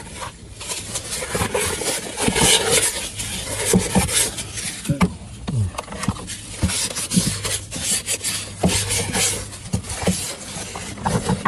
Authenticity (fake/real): real